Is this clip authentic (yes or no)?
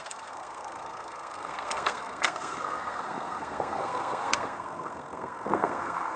no